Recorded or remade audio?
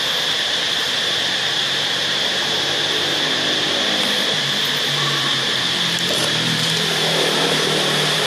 remade